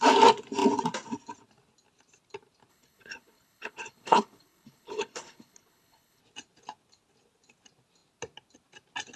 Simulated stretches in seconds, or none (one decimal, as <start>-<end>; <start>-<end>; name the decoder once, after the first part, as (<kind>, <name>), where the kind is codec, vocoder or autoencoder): 2.7-6.2 (codec, HILCodec)